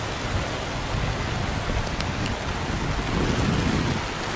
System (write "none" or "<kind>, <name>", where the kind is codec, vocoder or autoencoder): none